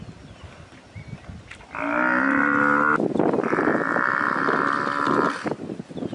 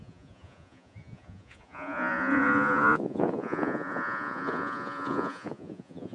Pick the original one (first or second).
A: first